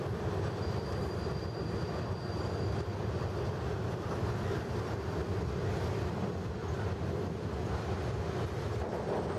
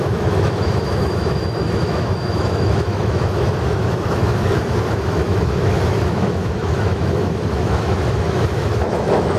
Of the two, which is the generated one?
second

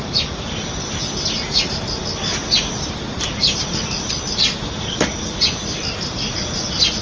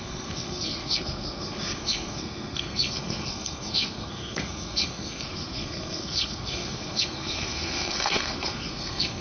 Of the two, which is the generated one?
second